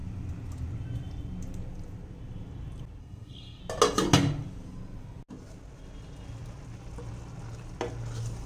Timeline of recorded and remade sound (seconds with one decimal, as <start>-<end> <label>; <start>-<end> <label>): 0.0-3.0 recorded; 3.0-3.6 remade; 3.6-8.5 recorded